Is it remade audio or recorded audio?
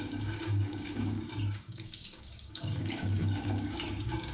remade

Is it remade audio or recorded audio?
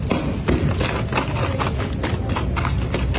recorded